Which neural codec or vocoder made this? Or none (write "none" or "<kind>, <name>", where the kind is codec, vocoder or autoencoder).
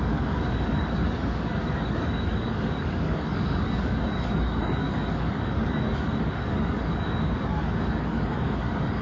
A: codec, DAC